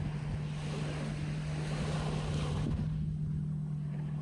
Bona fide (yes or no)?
yes